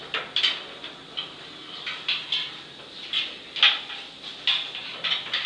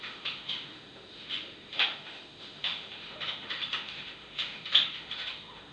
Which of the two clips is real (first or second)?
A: first